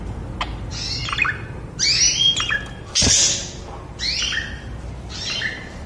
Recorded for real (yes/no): yes